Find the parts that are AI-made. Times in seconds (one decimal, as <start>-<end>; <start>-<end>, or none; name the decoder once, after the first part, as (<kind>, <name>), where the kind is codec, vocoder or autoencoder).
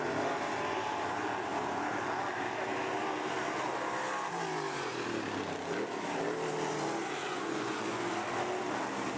7.2-8.1 (vocoder, Vocos)